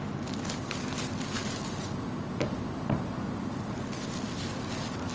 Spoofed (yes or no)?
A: no